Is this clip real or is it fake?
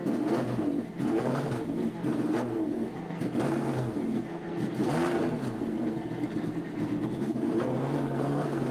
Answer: fake